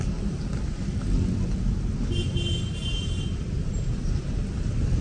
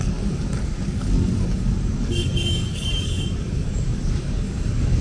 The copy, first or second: second